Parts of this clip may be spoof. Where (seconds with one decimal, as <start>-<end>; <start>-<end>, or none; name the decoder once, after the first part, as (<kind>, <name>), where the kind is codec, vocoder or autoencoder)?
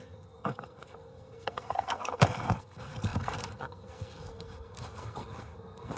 0.0-6.0 (codec, SNAC)